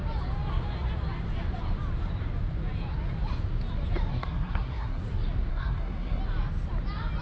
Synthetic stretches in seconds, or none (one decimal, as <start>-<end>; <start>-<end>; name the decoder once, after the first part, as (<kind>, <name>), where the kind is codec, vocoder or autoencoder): 4.1-5.0 (codec, SNAC); 5.5-6.2